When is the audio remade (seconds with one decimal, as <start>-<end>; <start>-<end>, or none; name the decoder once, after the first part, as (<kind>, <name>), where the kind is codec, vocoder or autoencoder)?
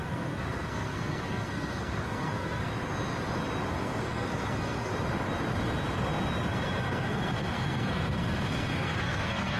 0.0-2.7 (codec, SNAC); 3.7-4.9; 6.5-9.6